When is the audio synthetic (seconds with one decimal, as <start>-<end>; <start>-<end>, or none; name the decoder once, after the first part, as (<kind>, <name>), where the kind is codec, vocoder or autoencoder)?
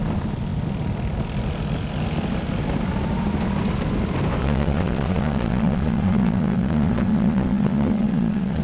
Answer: 4.4-8.6 (vocoder, Vocos)